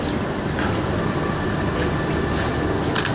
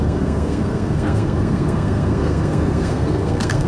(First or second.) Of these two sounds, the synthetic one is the second